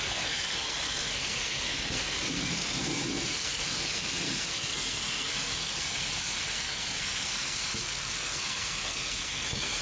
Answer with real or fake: fake